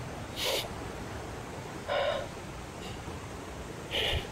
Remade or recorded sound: recorded